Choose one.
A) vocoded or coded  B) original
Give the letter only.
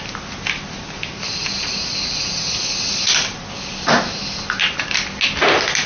B